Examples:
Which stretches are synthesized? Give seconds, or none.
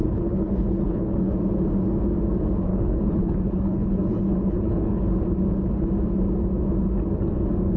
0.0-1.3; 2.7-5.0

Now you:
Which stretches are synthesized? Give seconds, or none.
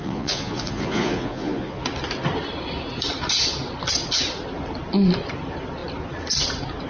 0.0-1.8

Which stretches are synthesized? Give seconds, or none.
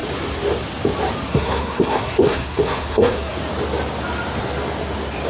1.3-3.3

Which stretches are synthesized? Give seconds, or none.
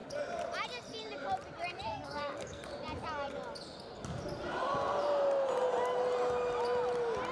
1.9-2.7